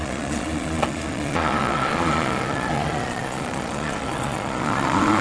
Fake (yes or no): yes